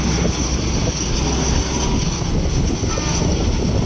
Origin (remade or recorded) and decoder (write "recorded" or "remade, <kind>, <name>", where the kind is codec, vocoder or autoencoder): recorded